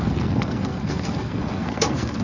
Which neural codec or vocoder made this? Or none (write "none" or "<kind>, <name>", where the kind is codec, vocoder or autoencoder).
codec, SNAC